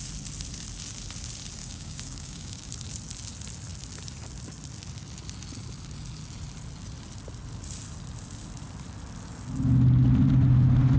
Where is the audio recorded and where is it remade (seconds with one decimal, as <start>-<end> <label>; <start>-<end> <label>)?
0.0-1.6 recorded; 1.6-2.7 remade; 2.7-11.0 recorded